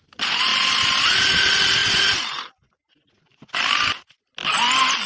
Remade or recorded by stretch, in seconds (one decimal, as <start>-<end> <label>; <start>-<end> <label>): 0.0-0.5 remade; 0.5-1.0 recorded; 1.0-5.1 remade